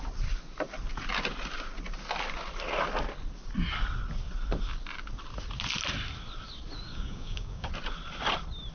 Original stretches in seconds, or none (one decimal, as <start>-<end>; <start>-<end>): 0.0-6.9; 7.7-8.7